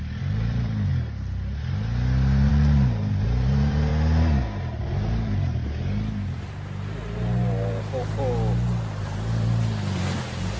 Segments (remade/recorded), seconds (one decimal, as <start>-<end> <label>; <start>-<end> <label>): 0.0-0.9 remade; 0.9-2.5 recorded; 2.5-3.9 remade; 3.9-4.8 recorded; 4.8-5.6 remade; 5.6-9.0 recorded; 9.0-10.6 remade